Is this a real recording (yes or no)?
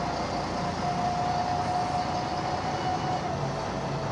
yes